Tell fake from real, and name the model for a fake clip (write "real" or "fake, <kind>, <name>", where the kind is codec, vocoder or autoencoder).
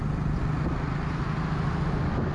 real